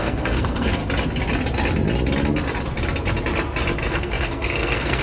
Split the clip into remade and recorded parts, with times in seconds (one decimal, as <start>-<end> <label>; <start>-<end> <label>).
0.0-0.8 remade; 0.8-3.8 recorded; 3.8-5.0 remade